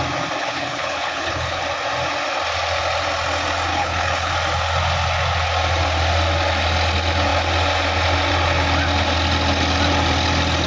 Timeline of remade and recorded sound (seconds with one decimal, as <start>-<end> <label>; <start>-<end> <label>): 0.0-0.4 recorded; 0.4-1.6 remade; 1.6-3.7 recorded; 3.7-4.3 remade; 4.3-10.7 recorded